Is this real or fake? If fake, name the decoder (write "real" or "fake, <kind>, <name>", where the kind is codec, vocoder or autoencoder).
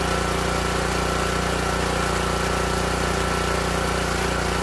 real